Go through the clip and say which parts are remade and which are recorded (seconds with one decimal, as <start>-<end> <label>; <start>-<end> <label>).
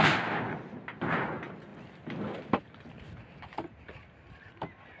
0.0-1.7 recorded; 1.7-2.6 remade; 2.6-5.0 recorded